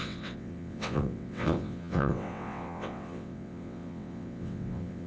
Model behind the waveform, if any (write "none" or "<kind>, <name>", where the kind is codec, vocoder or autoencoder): vocoder, WaveNeXt